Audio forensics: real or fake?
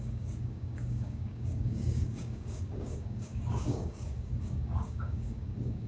fake